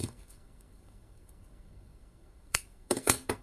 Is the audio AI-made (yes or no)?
yes